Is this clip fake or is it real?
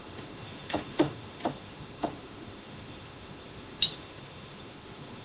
fake